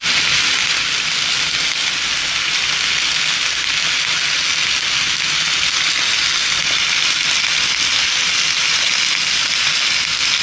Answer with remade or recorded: recorded